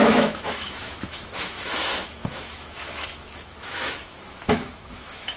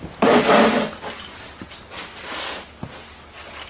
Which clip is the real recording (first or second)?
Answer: second